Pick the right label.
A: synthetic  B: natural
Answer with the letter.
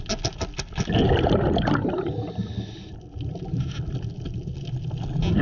B